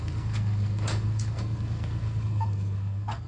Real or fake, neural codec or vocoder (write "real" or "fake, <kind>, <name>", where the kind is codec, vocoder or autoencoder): fake, codec, SNAC